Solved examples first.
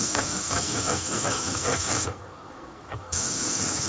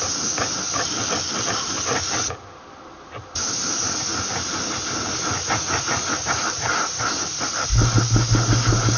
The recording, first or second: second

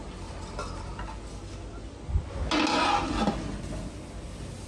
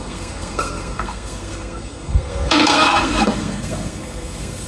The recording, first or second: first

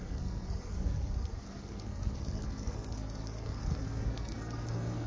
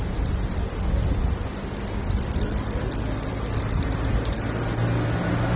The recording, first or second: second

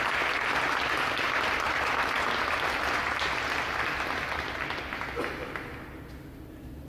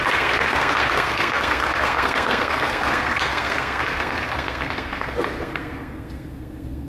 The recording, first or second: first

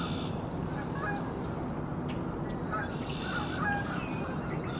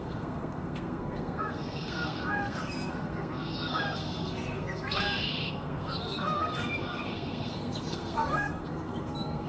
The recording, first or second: first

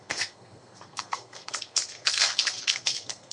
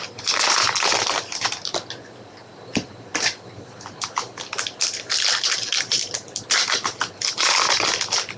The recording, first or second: second